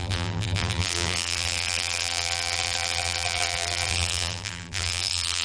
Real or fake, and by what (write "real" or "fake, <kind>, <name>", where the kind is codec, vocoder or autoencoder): fake, vocoder, BigVGAN v2